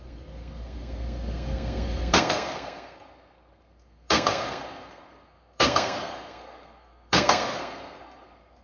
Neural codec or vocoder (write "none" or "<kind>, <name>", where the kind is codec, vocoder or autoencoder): codec, SNAC